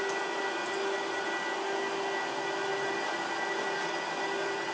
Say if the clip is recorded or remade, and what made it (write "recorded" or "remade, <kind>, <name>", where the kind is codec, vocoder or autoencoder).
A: recorded